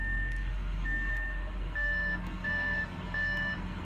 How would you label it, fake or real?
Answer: fake